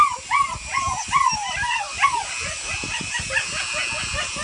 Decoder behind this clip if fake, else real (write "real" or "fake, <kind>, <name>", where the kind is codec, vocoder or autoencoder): real